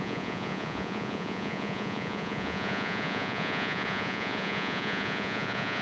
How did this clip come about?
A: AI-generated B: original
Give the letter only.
A